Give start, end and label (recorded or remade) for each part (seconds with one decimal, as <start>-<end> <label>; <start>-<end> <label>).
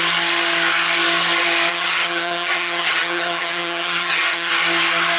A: 0.0-1.7 recorded; 1.7-4.5 remade; 4.5-5.2 recorded